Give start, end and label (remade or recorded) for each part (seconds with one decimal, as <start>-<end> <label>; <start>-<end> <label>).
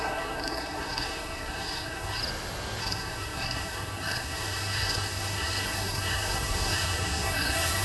0.0-2.2 remade; 2.2-2.8 recorded; 2.8-7.8 remade